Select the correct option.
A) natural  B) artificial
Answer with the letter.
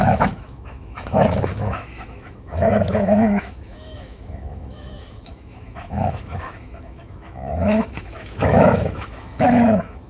B